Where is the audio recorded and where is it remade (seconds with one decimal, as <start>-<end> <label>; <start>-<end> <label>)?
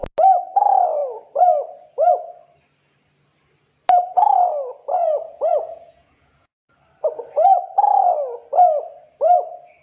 0.0-5.0 recorded; 5.0-6.7 remade; 6.7-9.8 recorded